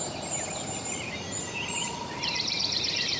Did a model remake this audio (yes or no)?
yes